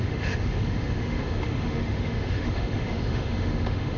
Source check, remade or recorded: remade